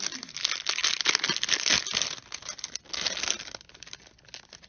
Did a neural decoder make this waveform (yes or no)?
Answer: no